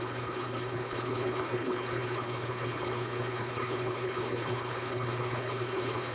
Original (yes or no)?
no